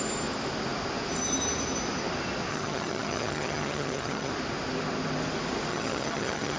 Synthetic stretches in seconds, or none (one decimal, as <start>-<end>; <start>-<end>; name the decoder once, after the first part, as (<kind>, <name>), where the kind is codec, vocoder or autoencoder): 2.5-4.3 (vocoder, HiFi-GAN); 5.7-6.6